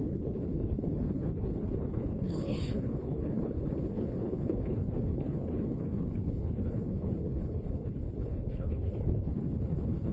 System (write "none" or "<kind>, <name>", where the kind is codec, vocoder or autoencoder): codec, HILCodec